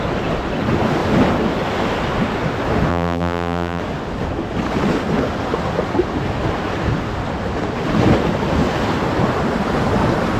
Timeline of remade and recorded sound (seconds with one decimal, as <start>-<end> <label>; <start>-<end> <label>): 0.0-2.9 recorded; 2.9-3.8 remade; 3.8-10.4 recorded